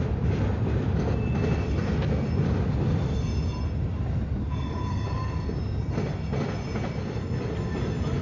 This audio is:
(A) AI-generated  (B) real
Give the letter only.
B